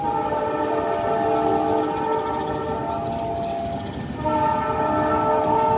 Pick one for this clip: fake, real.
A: real